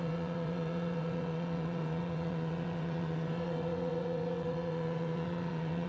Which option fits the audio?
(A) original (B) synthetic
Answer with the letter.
B